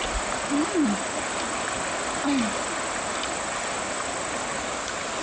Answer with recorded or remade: recorded